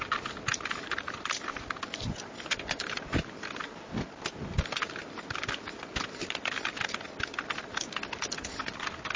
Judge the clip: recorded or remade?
recorded